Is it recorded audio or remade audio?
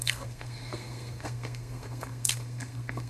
remade